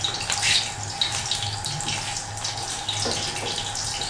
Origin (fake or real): real